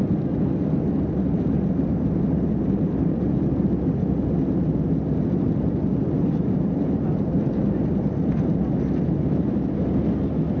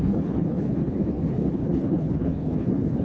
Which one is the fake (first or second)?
second